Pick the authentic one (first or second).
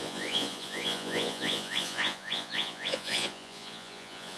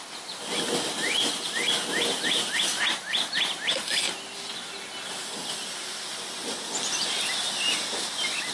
second